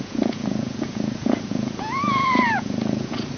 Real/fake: fake